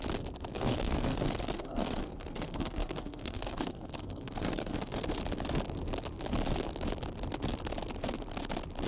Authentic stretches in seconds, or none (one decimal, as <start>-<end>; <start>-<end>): 0.0-0.5; 5.2-8.9